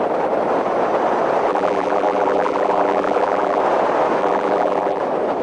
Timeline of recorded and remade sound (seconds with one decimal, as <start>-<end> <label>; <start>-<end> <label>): 0.0-1.5 recorded; 1.5-3.6 remade; 3.6-4.2 recorded; 4.2-5.0 remade; 5.0-5.4 recorded